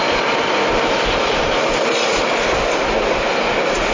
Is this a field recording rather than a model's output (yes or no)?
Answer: yes